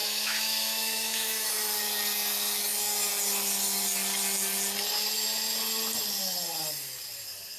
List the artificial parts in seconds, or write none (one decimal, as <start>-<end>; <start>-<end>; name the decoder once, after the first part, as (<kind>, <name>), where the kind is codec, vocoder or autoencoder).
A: 0.0-1.5 (autoencoder, DAC-VAE)